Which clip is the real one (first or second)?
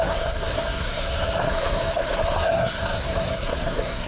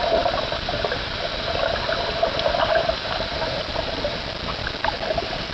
second